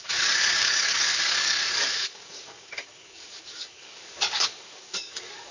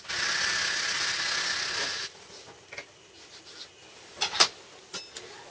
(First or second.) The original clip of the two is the second